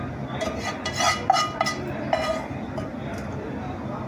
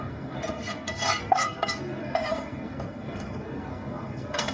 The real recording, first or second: first